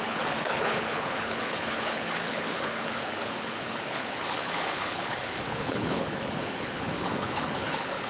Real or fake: fake